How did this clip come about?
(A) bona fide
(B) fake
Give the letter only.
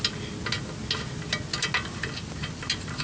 A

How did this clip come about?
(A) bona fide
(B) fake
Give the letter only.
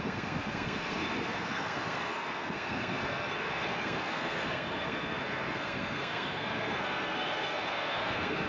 B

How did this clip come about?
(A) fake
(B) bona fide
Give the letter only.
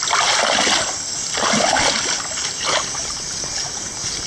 B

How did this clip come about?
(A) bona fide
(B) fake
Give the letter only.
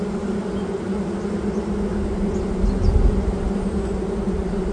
A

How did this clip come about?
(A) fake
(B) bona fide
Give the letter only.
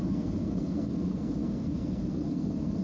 A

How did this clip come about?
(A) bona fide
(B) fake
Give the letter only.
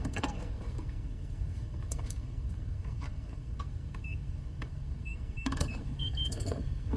B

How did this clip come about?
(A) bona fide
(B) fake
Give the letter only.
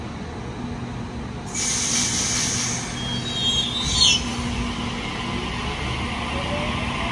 A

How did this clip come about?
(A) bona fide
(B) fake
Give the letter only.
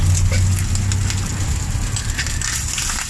A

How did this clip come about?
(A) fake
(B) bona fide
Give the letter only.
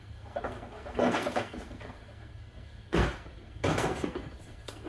A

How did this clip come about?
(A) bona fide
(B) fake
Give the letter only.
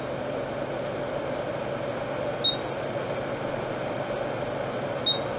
A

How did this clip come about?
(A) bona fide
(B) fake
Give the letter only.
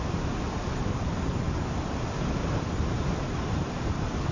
A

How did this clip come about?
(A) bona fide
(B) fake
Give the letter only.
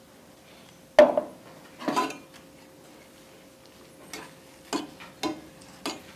A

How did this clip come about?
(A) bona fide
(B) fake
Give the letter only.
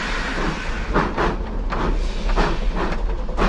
A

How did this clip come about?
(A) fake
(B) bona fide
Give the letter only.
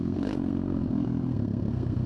A